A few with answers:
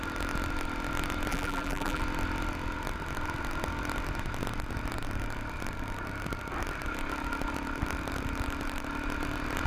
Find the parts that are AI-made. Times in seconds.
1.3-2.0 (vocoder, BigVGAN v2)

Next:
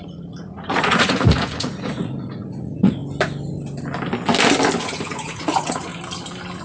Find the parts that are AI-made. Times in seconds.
0.0-3.0 (vocoder, Vocos); 4.8-5.9

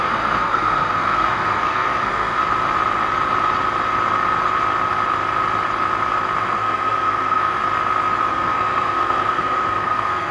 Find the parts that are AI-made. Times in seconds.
0.0-2.4 (codec, SNAC); 6.4-7.6; 8.3-10.3

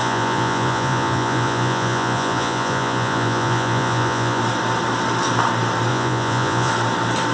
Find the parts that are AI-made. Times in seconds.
0.0-4.4 (vocoder, Vocos); 5.9-6.7